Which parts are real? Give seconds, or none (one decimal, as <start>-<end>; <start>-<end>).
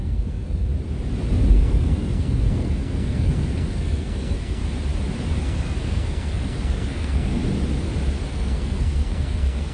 0.7-1.5; 4.6-5.4; 7.4-8.3